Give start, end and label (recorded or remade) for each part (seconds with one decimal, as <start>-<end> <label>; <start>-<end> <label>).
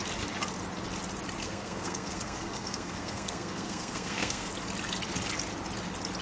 0.0-1.4 recorded; 1.4-4.5 remade; 4.5-6.2 recorded